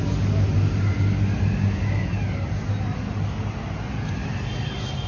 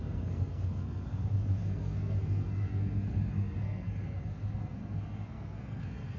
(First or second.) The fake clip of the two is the second